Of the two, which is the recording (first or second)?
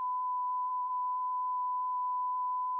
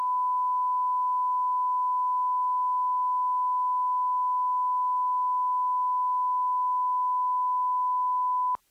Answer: second